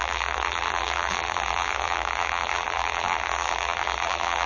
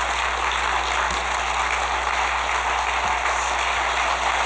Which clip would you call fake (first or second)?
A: first